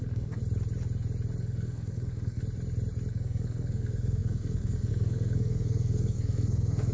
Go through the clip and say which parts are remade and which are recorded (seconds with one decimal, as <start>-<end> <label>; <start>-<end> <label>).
0.0-0.4 remade; 0.4-1.4 recorded; 1.4-2.4 remade; 2.4-3.1 recorded; 3.1-6.9 remade